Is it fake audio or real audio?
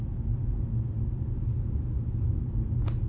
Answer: real